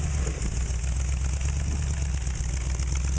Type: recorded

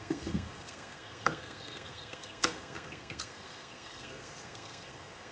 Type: remade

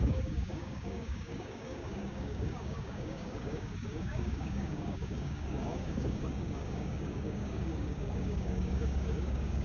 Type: remade